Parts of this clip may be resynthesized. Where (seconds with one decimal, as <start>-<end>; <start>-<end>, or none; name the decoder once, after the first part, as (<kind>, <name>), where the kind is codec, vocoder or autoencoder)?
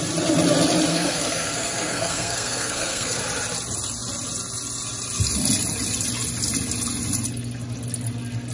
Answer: 0.9-3.2 (codec, SNAC)